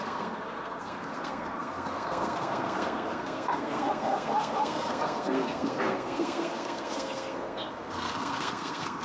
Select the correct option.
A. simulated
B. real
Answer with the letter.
A